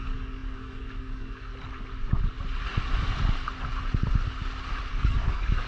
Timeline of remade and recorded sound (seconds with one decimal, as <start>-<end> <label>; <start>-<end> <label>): 0.0-1.5 remade; 1.5-4.9 recorded; 4.9-5.7 remade